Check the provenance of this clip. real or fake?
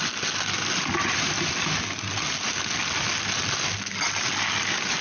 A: real